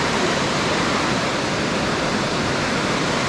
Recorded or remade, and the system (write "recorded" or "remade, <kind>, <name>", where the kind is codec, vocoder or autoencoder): remade, vocoder, BigVGAN v2